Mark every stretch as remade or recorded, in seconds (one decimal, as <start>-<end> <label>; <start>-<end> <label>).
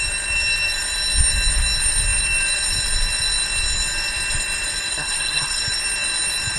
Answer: 0.0-4.9 recorded; 4.9-5.6 remade; 5.6-6.6 recorded